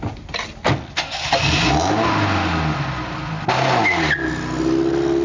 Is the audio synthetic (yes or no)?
no